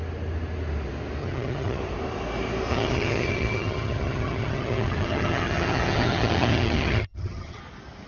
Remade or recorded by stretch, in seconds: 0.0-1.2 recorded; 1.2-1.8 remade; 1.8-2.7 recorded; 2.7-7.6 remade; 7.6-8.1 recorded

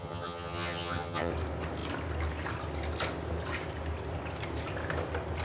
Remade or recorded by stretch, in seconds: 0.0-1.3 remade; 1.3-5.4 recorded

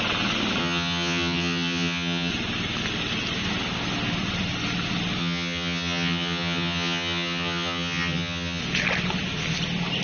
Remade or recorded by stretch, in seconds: 0.0-0.6 recorded; 0.6-2.3 remade; 2.3-5.2 recorded; 5.2-8.6 remade; 8.6-10.0 recorded

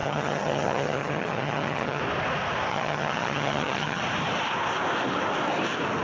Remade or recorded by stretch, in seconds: 0.0-2.0 remade; 2.0-2.7 recorded; 2.7-4.0 remade; 4.0-6.0 recorded

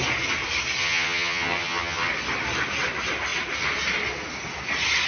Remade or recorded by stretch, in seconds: 0.0-0.8 recorded; 0.8-2.1 remade; 2.1-5.1 recorded

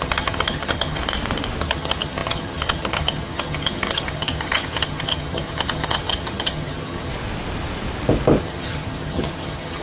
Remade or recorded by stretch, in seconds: 0.0-1.0 remade; 1.0-1.6 recorded; 1.6-7.1 remade; 7.1-8.4 recorded; 8.4-9.8 remade

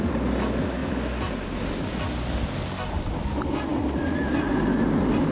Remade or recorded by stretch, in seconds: 0.0-5.3 recorded

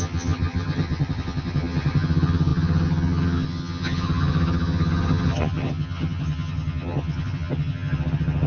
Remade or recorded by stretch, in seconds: 0.0-8.5 remade